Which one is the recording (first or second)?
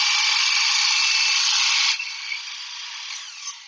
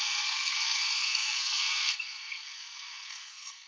first